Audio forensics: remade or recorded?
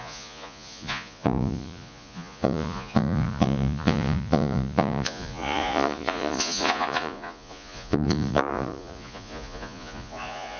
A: remade